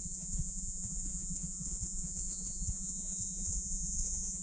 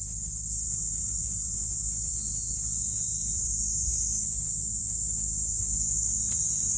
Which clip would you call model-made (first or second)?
first